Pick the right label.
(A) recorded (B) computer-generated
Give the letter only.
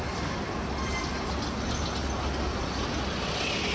A